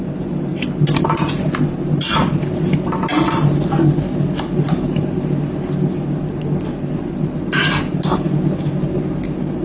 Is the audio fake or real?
real